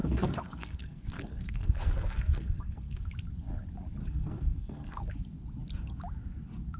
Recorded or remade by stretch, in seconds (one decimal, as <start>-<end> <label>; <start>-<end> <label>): 0.0-3.1 remade; 3.1-4.0 recorded; 4.0-5.1 remade; 5.1-6.8 recorded